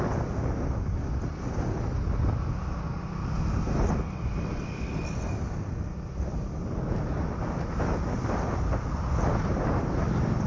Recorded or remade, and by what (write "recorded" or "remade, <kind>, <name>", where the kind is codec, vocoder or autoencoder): recorded